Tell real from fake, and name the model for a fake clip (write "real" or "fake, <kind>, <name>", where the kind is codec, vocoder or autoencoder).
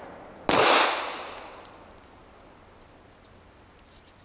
real